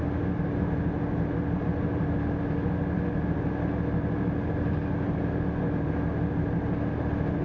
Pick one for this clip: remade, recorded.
recorded